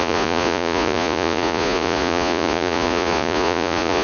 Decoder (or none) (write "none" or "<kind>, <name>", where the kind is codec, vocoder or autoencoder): vocoder, Vocos